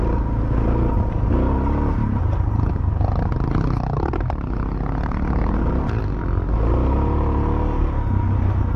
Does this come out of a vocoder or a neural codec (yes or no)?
no